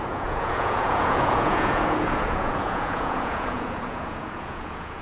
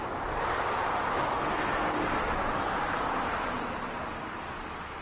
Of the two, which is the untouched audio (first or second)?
second